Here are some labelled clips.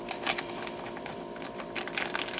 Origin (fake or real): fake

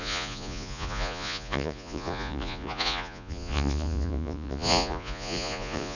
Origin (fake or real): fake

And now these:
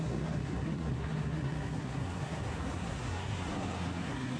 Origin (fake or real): fake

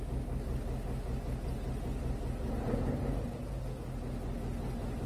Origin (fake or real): real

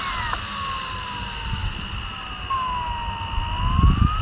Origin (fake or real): real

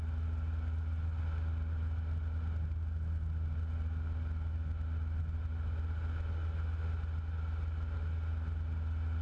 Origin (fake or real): real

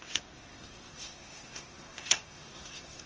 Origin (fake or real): fake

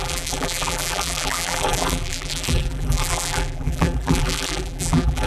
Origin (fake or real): fake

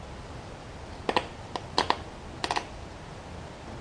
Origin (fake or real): real